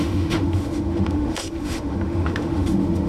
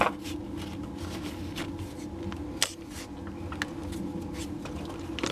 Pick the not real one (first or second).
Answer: first